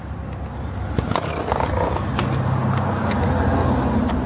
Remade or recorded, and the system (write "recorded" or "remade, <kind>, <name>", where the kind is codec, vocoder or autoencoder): recorded